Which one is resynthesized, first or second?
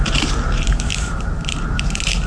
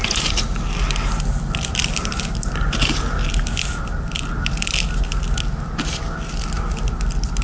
first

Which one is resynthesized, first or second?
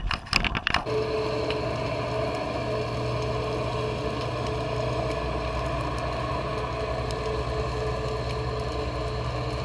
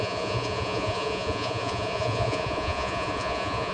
second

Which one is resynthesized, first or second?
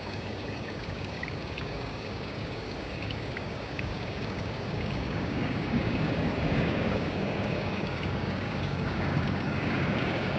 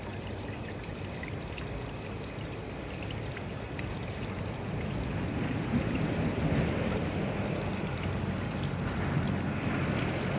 first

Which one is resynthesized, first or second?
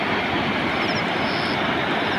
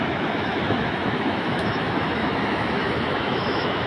second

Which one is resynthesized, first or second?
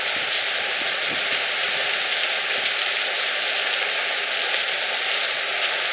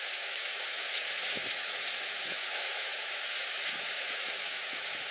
second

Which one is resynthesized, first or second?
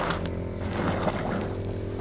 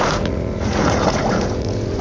second